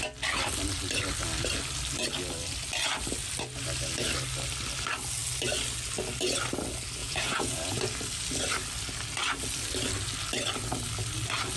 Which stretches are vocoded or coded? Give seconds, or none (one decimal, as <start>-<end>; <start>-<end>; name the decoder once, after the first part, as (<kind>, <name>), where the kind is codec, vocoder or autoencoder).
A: 7.0-7.8 (vocoder, Vocos)